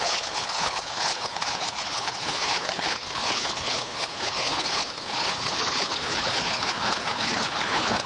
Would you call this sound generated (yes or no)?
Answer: yes